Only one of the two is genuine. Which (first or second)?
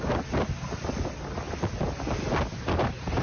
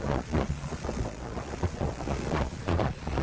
first